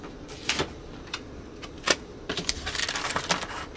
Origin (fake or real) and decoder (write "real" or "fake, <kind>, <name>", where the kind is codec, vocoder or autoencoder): real